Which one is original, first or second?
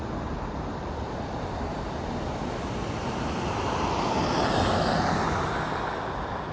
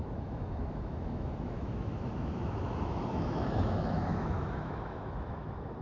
first